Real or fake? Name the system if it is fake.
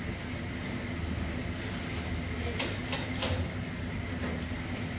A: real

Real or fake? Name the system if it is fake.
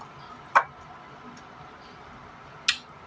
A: real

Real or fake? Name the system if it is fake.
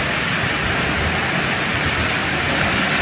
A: real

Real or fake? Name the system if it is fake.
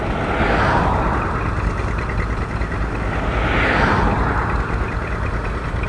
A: real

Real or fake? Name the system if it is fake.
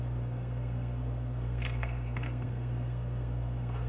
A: fake, codec, SNAC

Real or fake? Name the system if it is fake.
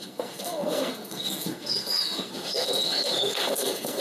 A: fake, codec, SNAC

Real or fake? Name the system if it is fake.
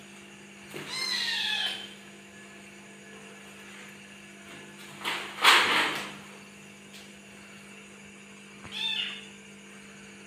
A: real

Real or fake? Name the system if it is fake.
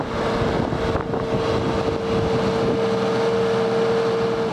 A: real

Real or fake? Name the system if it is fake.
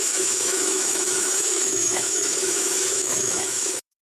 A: fake, autoencoder, DAC-VAE